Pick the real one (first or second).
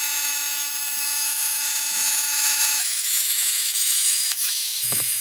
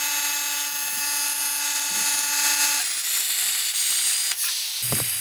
second